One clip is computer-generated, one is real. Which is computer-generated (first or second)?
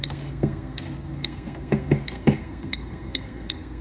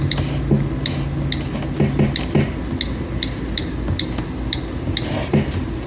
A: first